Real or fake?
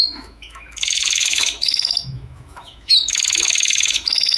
fake